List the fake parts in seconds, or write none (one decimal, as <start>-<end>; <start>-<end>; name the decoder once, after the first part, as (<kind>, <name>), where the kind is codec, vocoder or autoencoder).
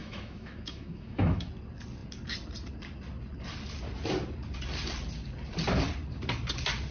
0.0-1.5 (autoencoder, DAC-VAE)